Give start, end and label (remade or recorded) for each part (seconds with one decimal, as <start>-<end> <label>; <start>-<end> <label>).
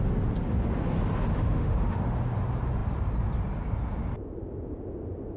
0.0-1.3 recorded; 1.3-2.0 remade; 2.0-5.4 recorded